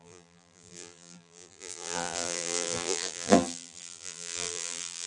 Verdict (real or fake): fake